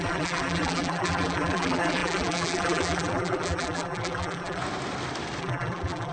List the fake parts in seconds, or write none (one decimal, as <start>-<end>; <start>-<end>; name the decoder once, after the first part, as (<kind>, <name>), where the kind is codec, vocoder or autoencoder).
0.0-4.6 (vocoder, BigVGAN v2); 5.4-6.1